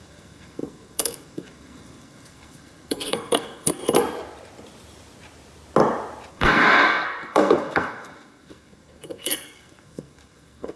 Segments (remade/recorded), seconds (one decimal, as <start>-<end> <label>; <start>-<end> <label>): 0.0-3.8 remade; 3.8-6.3 recorded; 6.3-10.8 remade